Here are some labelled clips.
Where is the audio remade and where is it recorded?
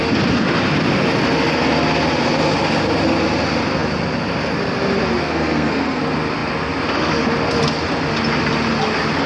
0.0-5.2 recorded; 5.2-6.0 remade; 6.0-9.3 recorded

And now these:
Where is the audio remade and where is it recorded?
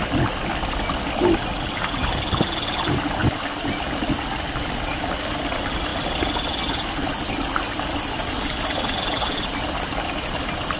0.0-10.8 recorded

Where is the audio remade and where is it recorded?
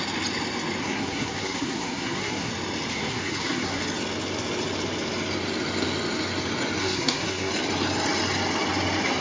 0.0-0.8 recorded; 0.8-2.5 remade; 2.5-2.9 recorded; 2.9-3.8 remade; 3.8-6.8 recorded; 6.8-7.5 remade; 7.5-9.2 recorded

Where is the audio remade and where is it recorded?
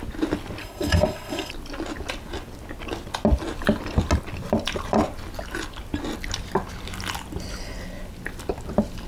0.0-0.6 recorded; 0.6-1.5 remade; 1.5-9.1 recorded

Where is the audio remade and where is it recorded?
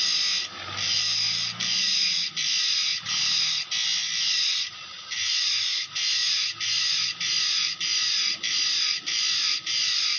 0.0-10.2 recorded